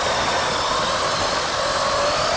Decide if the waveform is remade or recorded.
recorded